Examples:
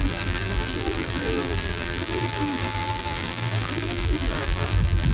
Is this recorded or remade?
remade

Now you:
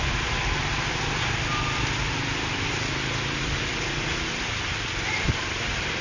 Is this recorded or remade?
recorded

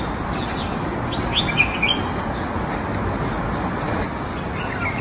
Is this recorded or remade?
recorded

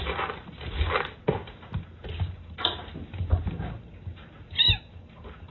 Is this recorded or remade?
recorded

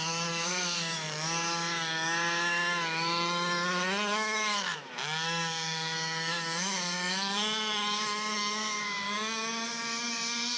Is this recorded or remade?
remade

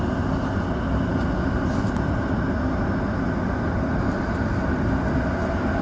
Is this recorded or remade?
recorded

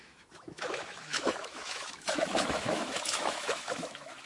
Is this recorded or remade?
remade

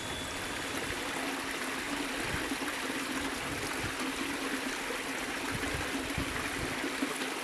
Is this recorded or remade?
recorded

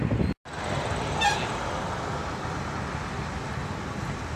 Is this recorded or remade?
recorded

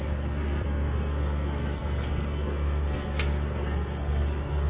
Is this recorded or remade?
remade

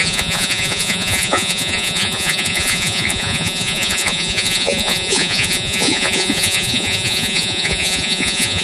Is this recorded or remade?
remade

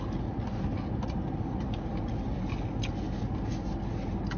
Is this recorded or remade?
recorded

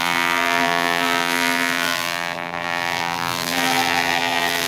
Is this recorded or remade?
remade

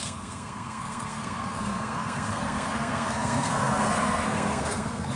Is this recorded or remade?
remade